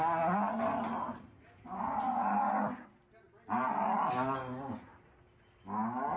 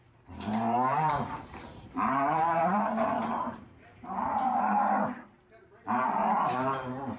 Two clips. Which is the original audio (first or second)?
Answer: first